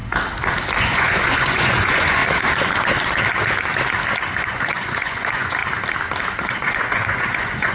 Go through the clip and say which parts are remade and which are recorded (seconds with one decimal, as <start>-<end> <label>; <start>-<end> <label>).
0.0-0.8 recorded; 0.8-2.2 remade; 2.2-4.4 recorded; 4.4-5.6 remade; 5.6-6.5 recorded; 6.5-7.7 remade